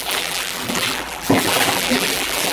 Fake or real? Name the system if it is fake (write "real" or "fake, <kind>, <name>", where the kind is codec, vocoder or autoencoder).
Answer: fake, vocoder, BigVGAN v2